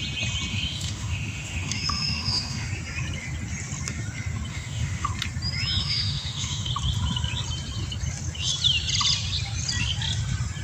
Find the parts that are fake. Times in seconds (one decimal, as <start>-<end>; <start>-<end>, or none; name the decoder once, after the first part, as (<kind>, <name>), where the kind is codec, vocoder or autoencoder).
0.5-2.7 (autoencoder, DAC-VAE); 4.5-5.1; 5.8-6.7